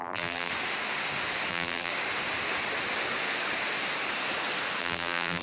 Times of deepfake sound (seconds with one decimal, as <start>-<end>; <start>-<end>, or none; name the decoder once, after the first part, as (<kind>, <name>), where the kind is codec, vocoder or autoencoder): 0.0-0.5 (vocoder, BigVGAN v2); 1.5-1.9; 4.8-5.4